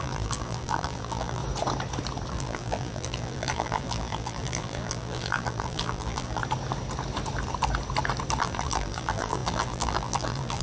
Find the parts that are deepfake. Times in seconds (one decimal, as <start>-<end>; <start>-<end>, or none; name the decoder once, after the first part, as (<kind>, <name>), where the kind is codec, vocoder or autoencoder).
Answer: 0.0-1.4 (vocoder, BigVGAN v2); 2.3-6.4; 8.4-10.6